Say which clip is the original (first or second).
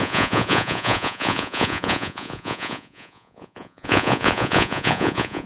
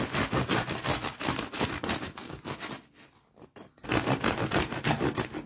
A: second